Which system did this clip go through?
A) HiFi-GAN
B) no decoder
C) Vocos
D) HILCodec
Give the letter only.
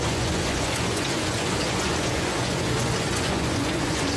C